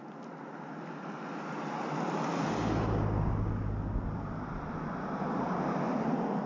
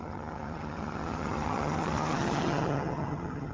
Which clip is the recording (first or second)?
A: first